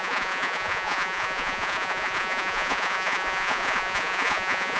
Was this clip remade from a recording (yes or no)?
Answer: yes